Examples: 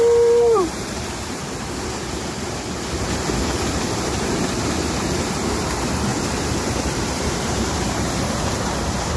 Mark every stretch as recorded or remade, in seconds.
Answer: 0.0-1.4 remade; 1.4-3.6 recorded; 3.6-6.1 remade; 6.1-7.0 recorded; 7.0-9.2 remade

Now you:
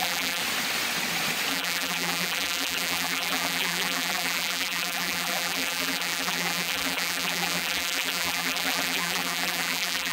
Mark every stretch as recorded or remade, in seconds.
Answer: 0.0-0.4 remade; 0.4-1.5 recorded; 1.5-10.1 remade

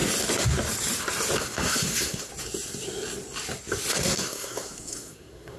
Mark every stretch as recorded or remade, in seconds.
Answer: 0.0-1.4 recorded; 1.4-2.3 remade; 2.3-3.9 recorded; 3.9-5.6 remade

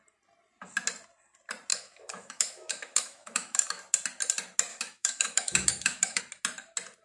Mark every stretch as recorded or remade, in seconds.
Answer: 0.0-1.7 recorded; 1.7-3.8 remade; 3.8-4.7 recorded; 4.7-6.2 remade; 6.2-7.0 recorded

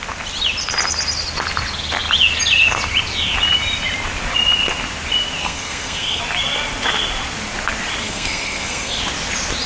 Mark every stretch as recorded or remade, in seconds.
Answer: 0.0-5.4 recorded; 5.4-6.2 remade; 6.2-8.0 recorded; 8.0-9.0 remade; 9.0-9.7 recorded

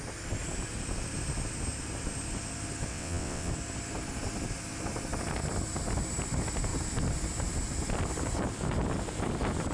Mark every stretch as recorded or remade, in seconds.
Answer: 0.0-2.9 recorded; 2.9-3.5 remade; 3.5-9.7 recorded

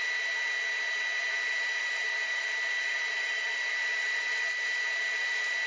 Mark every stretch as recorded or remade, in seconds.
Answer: 0.0-1.2 recorded; 1.2-4.6 remade; 4.6-5.7 recorded